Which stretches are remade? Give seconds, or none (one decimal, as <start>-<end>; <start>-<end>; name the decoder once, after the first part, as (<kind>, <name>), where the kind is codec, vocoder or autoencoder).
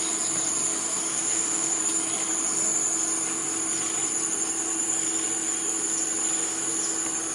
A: 1.1-1.8 (autoencoder, DAC-VAE)